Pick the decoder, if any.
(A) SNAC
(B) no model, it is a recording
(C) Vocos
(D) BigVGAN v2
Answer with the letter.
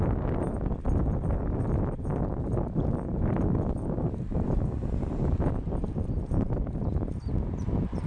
B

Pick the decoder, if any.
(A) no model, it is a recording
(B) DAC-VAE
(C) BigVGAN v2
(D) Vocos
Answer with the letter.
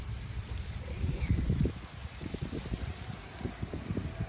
C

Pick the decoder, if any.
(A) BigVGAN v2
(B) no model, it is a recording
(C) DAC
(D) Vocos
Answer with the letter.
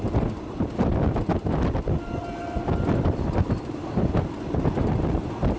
A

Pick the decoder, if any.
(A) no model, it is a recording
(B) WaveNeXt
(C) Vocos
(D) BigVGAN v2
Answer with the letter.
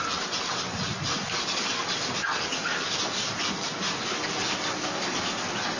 D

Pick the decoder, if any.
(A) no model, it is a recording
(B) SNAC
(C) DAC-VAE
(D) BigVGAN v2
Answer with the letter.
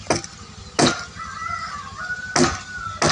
A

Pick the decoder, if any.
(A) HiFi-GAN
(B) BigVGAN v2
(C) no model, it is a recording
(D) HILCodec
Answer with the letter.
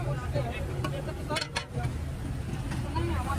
C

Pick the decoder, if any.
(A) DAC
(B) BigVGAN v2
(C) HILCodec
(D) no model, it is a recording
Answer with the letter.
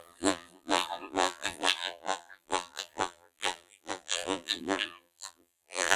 B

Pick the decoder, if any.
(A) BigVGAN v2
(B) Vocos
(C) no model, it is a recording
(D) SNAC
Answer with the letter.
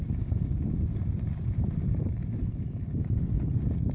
A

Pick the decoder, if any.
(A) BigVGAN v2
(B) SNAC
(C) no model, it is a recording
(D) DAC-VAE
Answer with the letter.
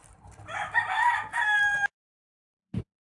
A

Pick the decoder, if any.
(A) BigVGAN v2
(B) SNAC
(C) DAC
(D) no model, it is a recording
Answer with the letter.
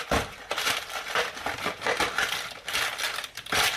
A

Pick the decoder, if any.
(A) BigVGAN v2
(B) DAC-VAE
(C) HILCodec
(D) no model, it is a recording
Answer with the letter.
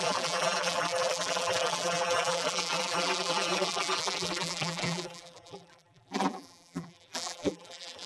A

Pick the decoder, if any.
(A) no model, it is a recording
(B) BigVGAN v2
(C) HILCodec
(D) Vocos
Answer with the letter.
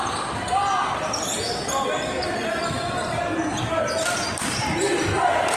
B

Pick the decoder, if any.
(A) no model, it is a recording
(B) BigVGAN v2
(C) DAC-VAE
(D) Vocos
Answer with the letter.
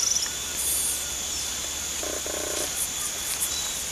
A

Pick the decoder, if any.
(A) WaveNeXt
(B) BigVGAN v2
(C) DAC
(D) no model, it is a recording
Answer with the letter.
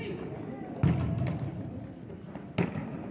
D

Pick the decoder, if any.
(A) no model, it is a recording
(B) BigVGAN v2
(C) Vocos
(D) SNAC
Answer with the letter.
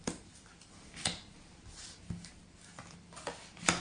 A